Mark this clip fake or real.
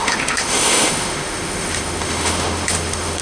fake